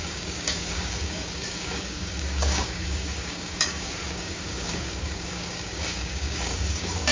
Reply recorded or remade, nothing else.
remade